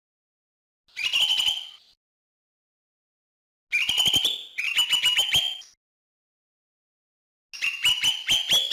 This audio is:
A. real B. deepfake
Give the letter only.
A